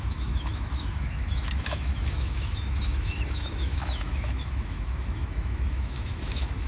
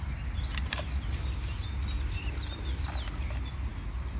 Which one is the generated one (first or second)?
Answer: first